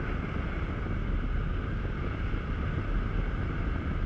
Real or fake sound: fake